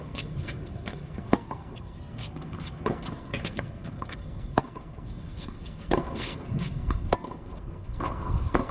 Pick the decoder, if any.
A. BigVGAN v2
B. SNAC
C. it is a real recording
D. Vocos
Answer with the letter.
B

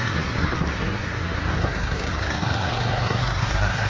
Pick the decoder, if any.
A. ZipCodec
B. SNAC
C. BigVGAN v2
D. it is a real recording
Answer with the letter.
B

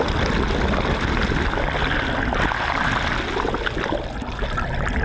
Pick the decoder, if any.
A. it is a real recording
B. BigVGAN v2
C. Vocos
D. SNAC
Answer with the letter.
A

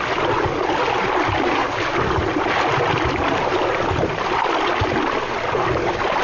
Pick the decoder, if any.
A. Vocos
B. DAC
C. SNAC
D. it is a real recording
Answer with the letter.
D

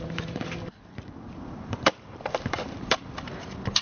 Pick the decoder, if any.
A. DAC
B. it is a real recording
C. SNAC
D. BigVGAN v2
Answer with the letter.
D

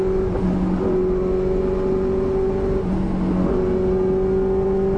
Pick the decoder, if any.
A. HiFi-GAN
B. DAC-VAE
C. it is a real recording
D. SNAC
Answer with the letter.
C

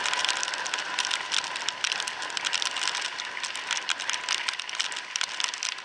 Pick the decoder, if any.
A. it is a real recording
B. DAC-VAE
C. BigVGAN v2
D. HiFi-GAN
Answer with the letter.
A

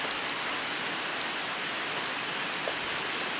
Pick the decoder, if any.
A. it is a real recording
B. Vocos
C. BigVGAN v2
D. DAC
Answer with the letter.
A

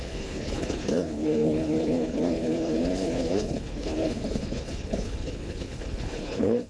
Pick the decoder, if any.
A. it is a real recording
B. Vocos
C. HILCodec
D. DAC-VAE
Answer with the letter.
C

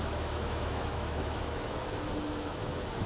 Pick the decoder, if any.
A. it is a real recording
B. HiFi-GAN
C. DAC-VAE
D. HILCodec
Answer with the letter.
C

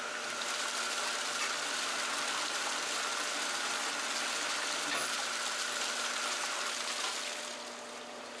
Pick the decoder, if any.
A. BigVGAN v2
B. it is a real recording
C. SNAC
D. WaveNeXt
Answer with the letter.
B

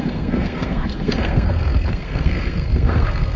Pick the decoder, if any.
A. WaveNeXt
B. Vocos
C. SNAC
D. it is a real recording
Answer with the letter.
C